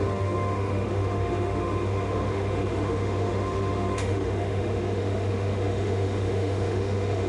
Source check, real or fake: fake